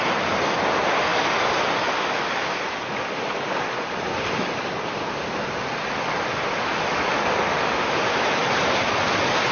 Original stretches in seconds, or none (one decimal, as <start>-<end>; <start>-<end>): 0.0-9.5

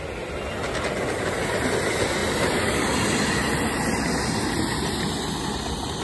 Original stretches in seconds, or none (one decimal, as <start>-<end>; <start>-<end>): 0.0-6.0

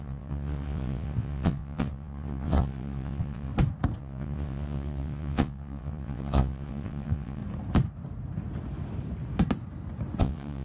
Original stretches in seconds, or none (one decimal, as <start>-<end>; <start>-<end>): 3.5-4.0; 7.4-10.2